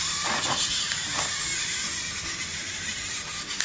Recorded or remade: recorded